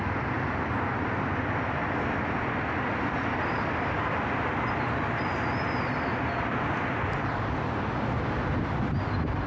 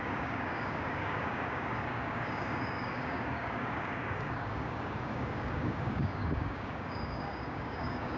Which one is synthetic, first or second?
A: second